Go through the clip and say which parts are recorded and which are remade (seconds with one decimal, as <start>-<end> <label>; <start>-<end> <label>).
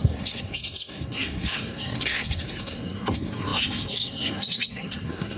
0.0-5.4 remade